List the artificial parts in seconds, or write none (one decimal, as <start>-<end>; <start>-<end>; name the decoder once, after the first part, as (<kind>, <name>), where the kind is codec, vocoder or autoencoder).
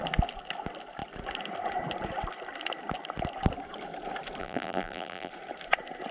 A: 4.4-5.3 (vocoder, BigVGAN v2)